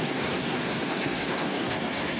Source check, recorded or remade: remade